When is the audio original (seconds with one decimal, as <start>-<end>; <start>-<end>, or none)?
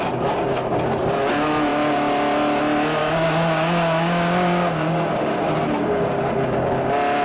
0.0-3.0; 6.2-7.2